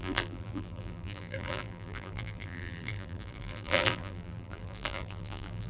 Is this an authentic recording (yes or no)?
no